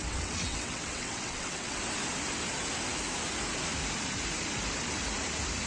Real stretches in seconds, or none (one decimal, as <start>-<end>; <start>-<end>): 1.8-5.7